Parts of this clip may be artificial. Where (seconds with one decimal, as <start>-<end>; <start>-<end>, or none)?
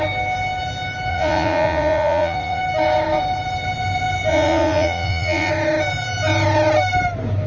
1.1-2.6; 4.3-5.5